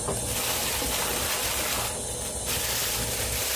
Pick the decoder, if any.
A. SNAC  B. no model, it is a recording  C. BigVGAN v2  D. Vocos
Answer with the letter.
B